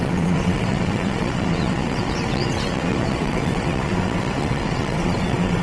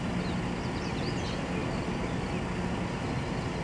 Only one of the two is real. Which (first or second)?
second